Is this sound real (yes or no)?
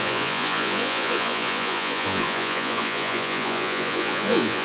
no